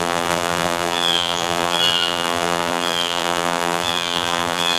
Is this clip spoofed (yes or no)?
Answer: yes